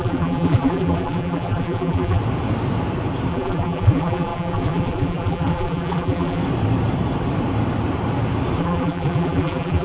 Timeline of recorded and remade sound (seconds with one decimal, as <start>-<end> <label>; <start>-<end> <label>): 0.0-2.2 remade; 2.2-3.3 recorded; 3.3-6.4 remade; 6.4-8.6 recorded; 8.6-9.8 remade